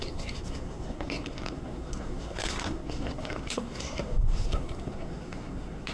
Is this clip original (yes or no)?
no